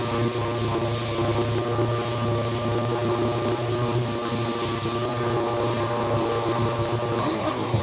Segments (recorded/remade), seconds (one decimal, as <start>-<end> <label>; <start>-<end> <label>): 0.0-7.2 recorded; 7.2-7.8 remade